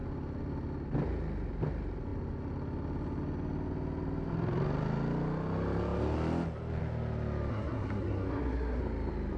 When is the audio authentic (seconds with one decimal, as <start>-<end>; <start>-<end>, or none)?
0.0-7.5; 8.8-9.4